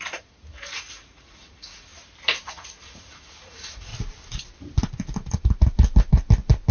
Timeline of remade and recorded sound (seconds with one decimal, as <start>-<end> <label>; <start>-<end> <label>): 0.0-1.9 remade; 1.9-2.5 recorded; 2.5-3.9 remade; 3.9-6.7 recorded